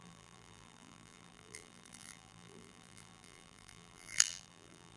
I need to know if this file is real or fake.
fake